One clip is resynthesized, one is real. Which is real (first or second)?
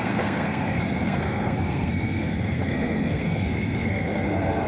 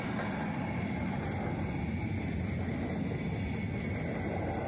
second